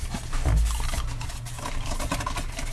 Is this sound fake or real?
real